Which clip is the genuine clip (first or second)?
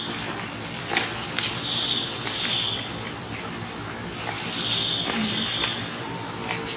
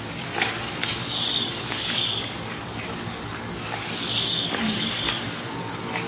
first